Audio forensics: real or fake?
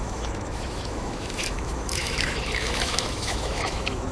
fake